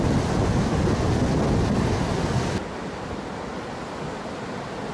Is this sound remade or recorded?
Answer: recorded